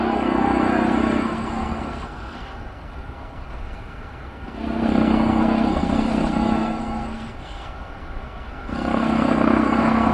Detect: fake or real fake